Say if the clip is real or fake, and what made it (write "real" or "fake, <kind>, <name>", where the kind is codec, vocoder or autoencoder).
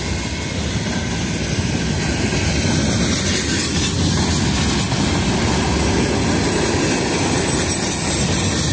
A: real